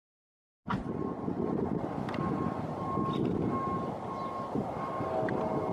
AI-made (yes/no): no